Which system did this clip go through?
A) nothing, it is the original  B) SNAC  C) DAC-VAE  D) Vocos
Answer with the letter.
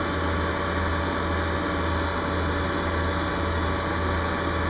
A